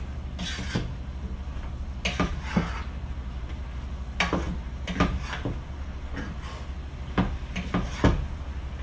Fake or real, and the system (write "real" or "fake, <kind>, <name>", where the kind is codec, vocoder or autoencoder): real